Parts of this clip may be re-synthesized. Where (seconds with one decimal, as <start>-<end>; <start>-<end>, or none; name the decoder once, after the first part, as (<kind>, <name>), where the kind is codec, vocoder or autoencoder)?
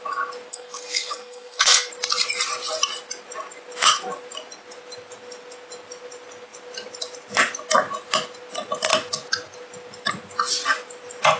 0.5-1.9 (codec, SNAC)